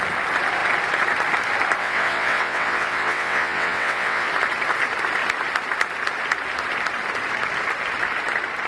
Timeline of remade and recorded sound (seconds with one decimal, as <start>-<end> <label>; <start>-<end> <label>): 0.0-1.8 recorded; 1.8-4.3 remade; 4.3-8.7 recorded

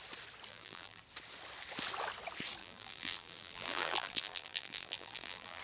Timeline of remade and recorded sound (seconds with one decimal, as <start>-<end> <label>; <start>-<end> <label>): 0.0-0.5 recorded; 0.5-1.0 remade; 1.0-2.6 recorded; 2.6-5.6 remade

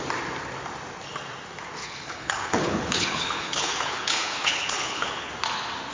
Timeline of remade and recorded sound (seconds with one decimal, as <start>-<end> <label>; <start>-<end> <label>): 0.0-1.8 recorded; 1.8-5.3 remade; 5.3-5.9 recorded

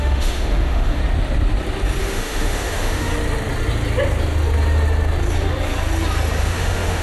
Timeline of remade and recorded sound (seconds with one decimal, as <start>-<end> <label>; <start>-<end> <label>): 0.0-1.0 remade; 1.0-2.0 recorded; 2.0-3.1 remade; 3.1-6.4 recorded; 6.4-7.0 remade

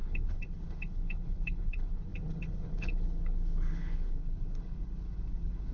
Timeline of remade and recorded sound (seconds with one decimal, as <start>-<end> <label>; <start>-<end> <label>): 0.0-5.7 remade

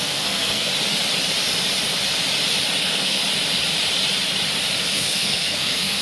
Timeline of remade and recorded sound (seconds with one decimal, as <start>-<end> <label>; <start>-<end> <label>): 0.0-0.7 remade; 0.7-2.8 recorded; 2.8-3.2 remade; 3.2-4.9 recorded; 4.9-6.0 remade

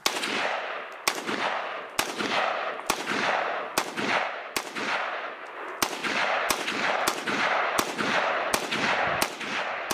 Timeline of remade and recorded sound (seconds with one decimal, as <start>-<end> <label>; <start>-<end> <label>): 0.0-9.9 recorded